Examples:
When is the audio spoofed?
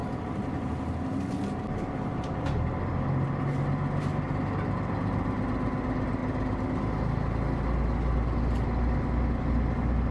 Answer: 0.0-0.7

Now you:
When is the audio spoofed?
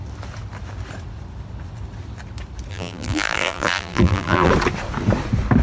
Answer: 2.7-4.5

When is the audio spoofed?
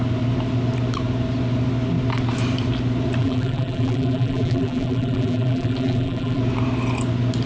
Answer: 3.2-6.4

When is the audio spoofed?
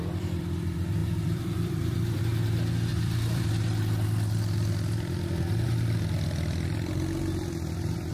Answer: 1.0-2.2; 2.9-3.6